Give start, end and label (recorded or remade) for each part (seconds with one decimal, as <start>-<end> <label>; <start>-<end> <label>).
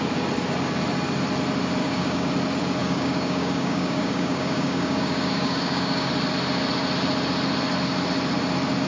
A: 0.0-1.8 recorded; 1.8-2.3 remade; 2.3-2.8 recorded; 2.8-6.1 remade; 6.1-8.9 recorded